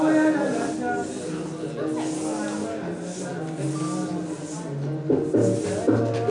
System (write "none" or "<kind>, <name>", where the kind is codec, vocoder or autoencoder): none